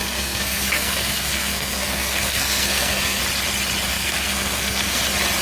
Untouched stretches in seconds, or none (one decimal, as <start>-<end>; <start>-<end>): 3.2-3.9; 5.0-5.4